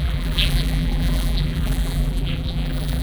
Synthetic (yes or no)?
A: yes